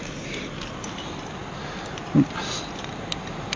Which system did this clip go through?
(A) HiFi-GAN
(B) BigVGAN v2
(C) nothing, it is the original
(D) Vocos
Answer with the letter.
C